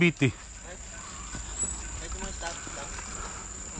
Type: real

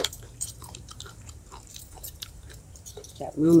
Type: fake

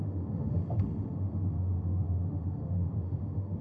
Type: fake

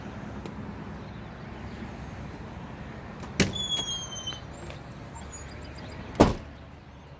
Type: real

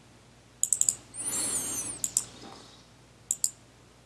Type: real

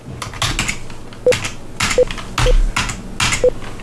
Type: real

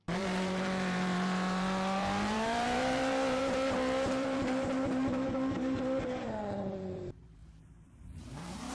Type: fake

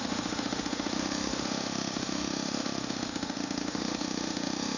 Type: fake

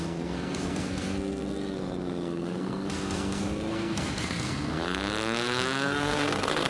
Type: fake